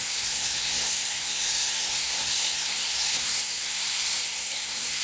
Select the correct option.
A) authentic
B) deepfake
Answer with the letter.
B